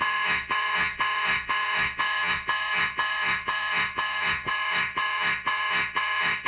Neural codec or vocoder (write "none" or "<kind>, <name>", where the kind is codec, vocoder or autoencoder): vocoder, Vocos